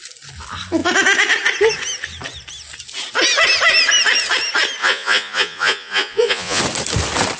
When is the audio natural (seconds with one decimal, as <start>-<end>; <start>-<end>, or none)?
0.0-4.8; 6.6-7.4